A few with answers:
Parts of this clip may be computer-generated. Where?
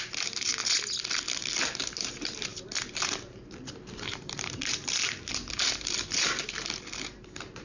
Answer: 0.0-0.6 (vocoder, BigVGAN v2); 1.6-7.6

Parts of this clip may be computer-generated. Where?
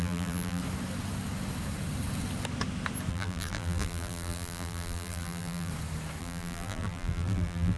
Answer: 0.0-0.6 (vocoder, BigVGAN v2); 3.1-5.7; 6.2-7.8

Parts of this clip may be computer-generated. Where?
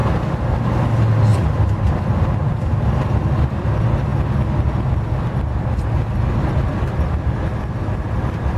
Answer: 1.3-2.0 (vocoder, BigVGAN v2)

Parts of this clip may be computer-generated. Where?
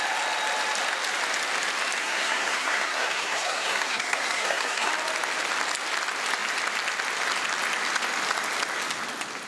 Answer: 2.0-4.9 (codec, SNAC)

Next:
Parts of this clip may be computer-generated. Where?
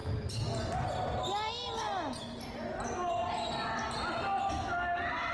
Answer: none